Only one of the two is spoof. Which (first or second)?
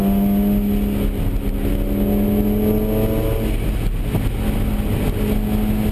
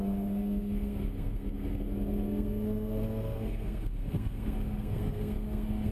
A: second